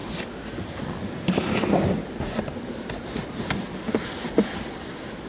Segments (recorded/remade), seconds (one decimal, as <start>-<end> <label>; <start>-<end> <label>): 0.0-5.3 recorded